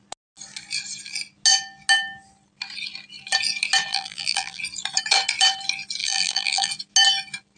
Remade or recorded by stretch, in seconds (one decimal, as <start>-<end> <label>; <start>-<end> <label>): 0.0-3.9 recorded; 3.9-4.6 remade; 4.6-6.0 recorded; 6.0-6.7 remade; 6.7-7.6 recorded